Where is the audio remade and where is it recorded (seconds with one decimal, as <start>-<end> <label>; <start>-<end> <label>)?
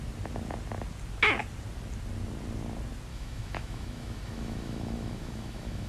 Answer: 0.0-3.1 recorded; 3.1-5.9 remade